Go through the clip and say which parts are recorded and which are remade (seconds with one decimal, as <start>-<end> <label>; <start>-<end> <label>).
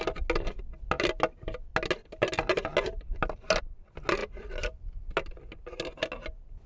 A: 0.0-6.7 recorded